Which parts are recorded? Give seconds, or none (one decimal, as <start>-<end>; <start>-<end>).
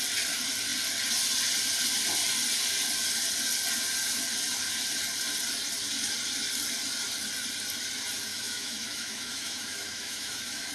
0.0-8.3